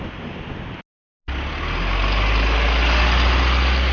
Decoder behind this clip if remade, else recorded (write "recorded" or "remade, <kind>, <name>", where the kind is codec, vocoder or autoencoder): recorded